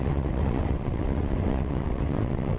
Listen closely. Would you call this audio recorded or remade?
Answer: remade